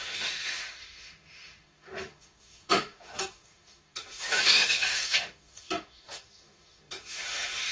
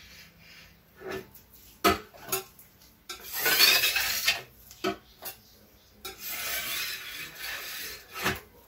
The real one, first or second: second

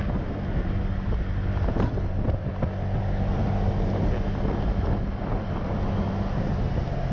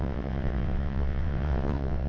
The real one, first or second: first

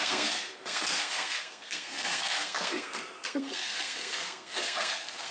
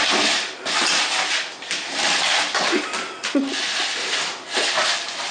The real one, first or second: second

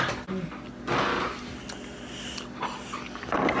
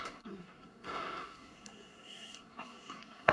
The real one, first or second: first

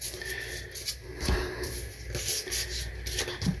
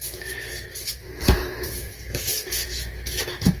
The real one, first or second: first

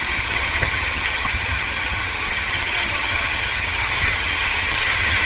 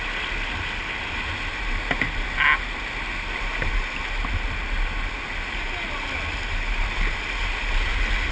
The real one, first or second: second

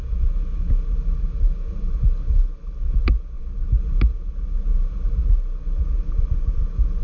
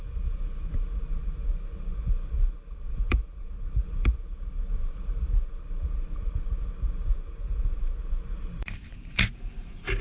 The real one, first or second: first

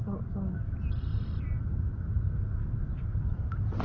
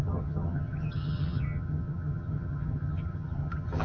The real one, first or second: first